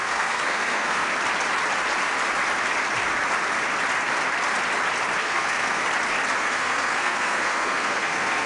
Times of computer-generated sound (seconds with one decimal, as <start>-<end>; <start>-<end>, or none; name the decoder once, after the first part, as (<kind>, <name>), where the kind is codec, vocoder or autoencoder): 0.0-1.1 (codec, SNAC); 5.2-5.8; 6.4-8.5